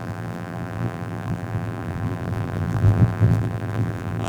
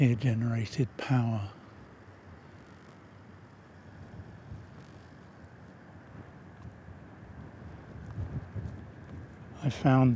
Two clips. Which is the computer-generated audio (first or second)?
first